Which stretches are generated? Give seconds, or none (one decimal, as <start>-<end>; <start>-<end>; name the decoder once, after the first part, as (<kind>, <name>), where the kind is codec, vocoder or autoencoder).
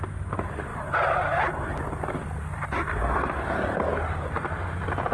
0.7-3.8 (vocoder, BigVGAN v2)